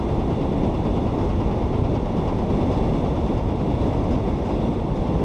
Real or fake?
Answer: real